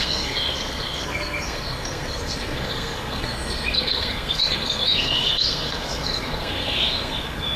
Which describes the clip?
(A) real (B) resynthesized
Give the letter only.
B